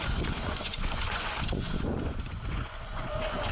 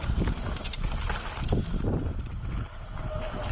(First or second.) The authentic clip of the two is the second